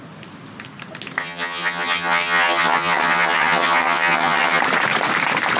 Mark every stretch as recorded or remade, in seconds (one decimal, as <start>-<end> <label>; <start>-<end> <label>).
0.0-1.2 recorded; 1.2-4.6 remade; 4.6-5.6 recorded